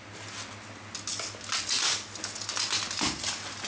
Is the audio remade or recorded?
recorded